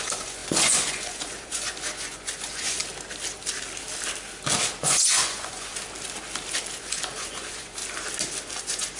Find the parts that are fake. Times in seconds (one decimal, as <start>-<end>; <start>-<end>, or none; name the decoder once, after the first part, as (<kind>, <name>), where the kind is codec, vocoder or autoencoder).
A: 0.0-2.8 (vocoder, Vocos); 4.8-5.7; 6.8-7.8; 8.6-9.0